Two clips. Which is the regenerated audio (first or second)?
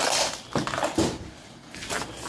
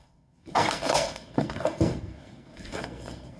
second